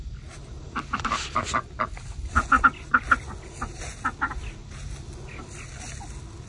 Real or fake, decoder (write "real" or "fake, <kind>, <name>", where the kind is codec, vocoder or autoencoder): real